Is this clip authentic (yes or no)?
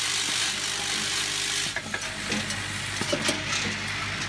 yes